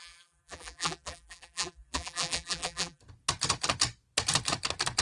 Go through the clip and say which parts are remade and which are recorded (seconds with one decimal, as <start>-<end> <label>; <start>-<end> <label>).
0.0-3.0 remade; 3.0-5.0 recorded